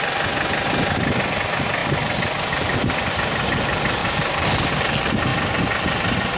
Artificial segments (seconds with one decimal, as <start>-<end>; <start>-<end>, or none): 1.8-2.5; 4.0-4.7